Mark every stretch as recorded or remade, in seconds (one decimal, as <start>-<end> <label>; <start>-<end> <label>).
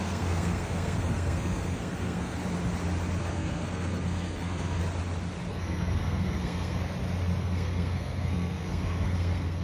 0.0-2.4 remade; 2.4-3.2 recorded; 3.2-4.8 remade; 4.8-5.5 recorded; 5.5-6.8 remade; 6.8-7.4 recorded; 7.4-9.6 remade